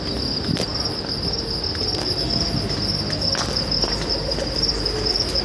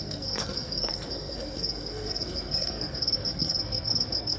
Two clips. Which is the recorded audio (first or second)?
first